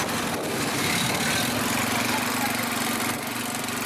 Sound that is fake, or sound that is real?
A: real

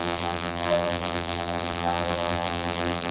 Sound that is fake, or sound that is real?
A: fake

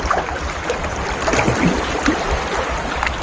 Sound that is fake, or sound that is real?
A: real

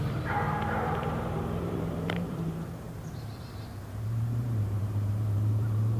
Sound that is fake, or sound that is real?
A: fake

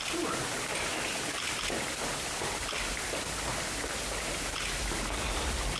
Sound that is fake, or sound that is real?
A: real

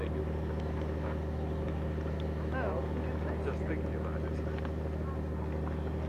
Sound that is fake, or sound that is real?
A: real